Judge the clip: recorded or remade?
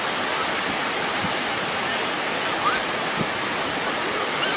recorded